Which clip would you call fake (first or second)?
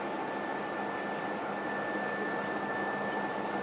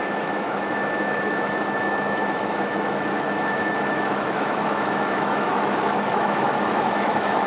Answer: second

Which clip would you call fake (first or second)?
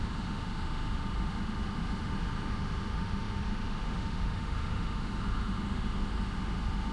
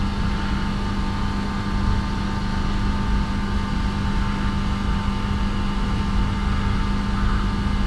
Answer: first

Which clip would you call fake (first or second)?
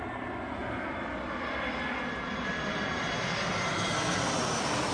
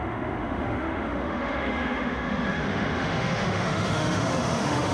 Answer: second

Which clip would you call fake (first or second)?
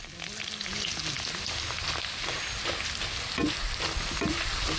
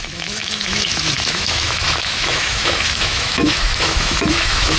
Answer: second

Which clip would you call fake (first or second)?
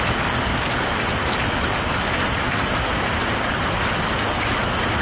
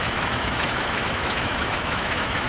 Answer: second